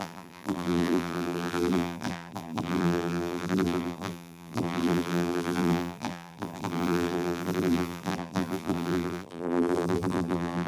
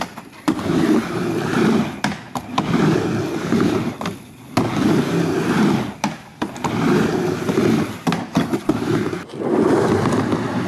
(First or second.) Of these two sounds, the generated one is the first